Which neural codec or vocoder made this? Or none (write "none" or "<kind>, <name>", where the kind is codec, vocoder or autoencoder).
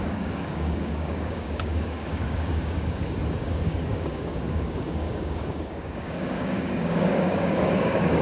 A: codec, DAC